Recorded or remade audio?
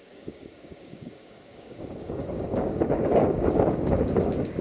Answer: remade